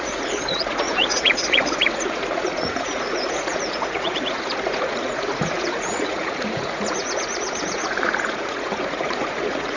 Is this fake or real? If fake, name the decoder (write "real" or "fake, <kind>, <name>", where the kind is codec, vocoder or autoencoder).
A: fake, vocoder, Vocos